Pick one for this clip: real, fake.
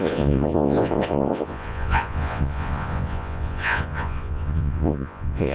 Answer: fake